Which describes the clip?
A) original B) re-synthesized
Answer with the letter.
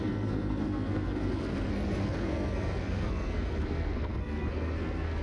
B